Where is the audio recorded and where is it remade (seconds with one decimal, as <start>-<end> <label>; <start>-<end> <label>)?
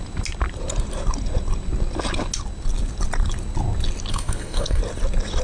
0.0-4.1 recorded; 4.1-4.8 remade; 4.8-5.4 recorded